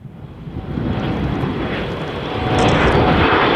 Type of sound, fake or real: real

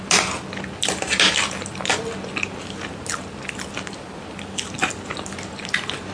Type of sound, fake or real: real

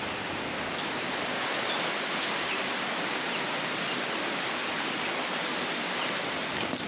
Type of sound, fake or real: real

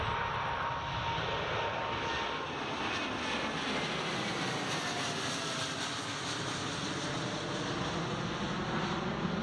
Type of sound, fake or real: real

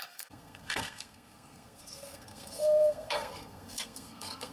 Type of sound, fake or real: fake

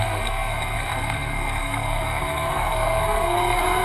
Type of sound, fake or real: fake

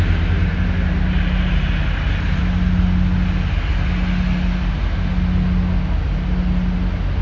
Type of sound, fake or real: real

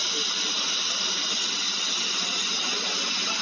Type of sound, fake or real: real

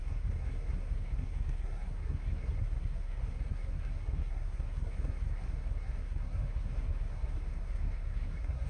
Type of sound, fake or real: fake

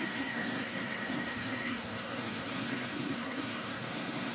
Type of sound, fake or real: fake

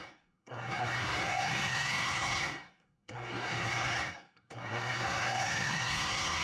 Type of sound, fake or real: fake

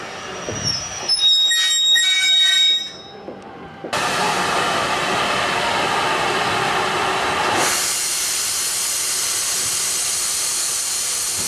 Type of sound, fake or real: real